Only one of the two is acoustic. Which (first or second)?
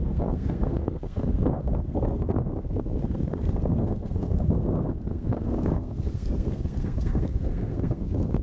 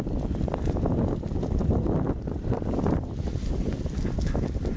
second